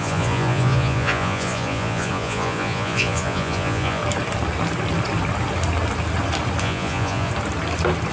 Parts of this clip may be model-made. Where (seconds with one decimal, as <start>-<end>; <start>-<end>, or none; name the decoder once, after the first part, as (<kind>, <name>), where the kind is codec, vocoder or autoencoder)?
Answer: 0.0-4.0 (vocoder, Vocos); 6.6-7.3